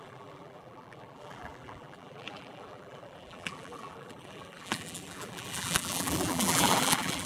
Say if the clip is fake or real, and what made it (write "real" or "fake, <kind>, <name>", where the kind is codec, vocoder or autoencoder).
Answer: fake, vocoder, BigVGAN v2